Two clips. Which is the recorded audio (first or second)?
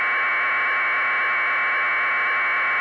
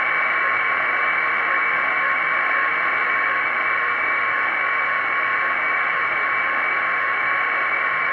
first